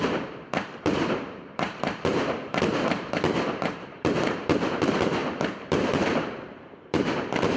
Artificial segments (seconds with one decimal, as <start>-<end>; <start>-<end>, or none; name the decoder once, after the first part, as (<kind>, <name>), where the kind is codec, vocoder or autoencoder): 0.0-7.6 (vocoder, BigVGAN v2)